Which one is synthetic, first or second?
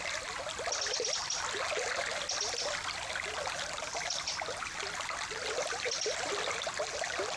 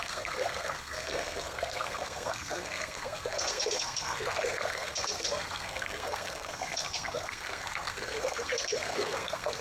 second